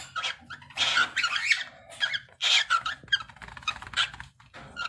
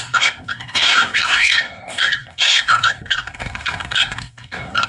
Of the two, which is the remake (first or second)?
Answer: second